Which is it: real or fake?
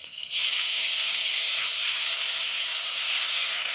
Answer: fake